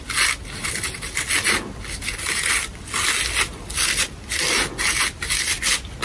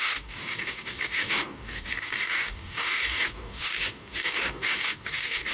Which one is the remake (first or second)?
second